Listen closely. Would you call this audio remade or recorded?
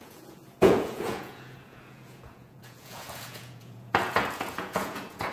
remade